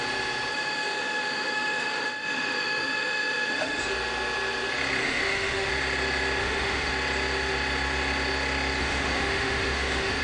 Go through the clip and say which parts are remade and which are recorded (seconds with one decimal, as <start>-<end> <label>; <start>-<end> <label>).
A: 0.0-0.5 recorded; 0.5-3.8 remade; 3.8-5.0 recorded; 5.0-5.7 remade; 5.7-6.4 recorded; 6.4-6.9 remade; 6.9-8.8 recorded; 8.8-10.2 remade